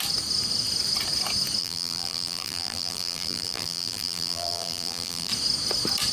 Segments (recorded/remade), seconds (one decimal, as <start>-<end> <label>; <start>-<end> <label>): 0.0-1.6 recorded; 1.6-5.3 remade; 5.3-6.1 recorded